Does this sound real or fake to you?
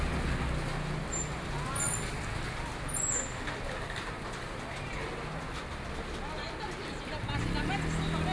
real